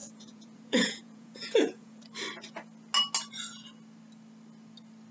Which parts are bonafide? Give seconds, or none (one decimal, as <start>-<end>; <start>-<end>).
2.0-5.1